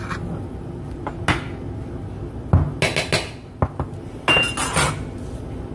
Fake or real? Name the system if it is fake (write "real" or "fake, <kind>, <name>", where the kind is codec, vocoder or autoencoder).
real